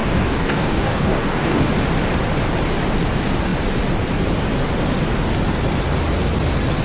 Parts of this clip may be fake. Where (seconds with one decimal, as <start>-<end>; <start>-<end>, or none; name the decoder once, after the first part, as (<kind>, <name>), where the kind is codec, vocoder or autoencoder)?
0.0-1.7 (codec, DAC)